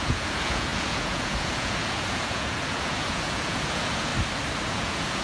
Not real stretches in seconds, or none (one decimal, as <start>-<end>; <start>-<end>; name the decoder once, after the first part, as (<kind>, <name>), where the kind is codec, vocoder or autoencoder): 0.0-4.1 (vocoder, Vocos); 4.7-5.2